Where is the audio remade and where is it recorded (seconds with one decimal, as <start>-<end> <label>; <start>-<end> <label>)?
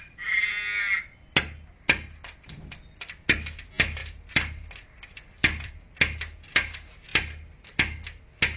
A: 0.0-4.0 recorded; 4.0-5.8 remade; 5.8-8.6 recorded